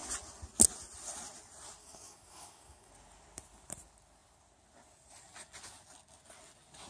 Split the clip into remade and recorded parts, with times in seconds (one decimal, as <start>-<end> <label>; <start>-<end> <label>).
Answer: 0.0-1.8 recorded; 1.8-2.9 remade; 2.9-6.9 recorded